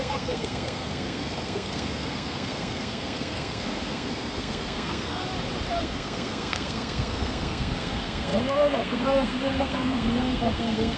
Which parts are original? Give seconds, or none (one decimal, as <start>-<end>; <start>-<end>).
5.2-5.8